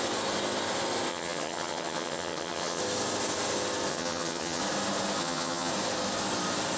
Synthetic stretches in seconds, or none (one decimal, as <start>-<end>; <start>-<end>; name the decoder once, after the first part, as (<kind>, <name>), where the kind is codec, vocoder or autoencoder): 1.1-2.8 (vocoder, HiFi-GAN); 3.9-4.6; 5.2-5.7